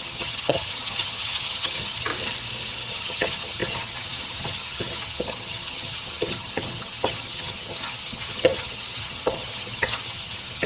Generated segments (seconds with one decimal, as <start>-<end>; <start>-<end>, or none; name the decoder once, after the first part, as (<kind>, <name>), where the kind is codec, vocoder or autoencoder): 0.0-2.1 (vocoder, HiFi-GAN); 2.9-10.7